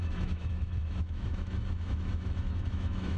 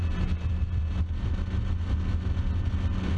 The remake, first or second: first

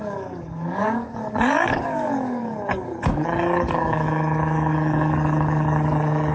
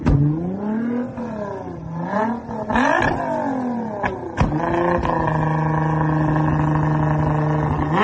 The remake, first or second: first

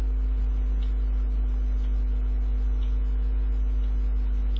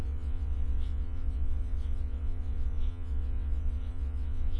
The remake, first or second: second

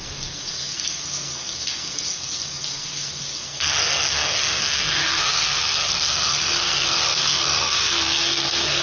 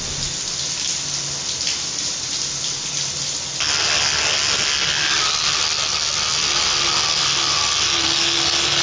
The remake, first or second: first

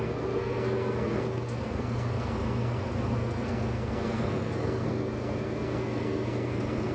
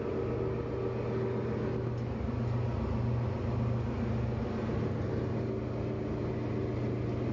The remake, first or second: first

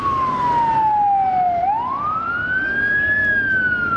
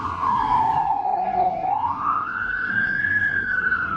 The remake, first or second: second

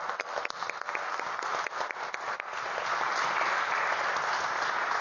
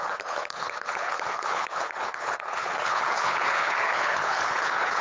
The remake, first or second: second